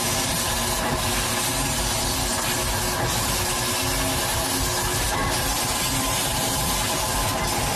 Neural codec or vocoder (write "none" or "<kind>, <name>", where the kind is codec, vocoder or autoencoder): none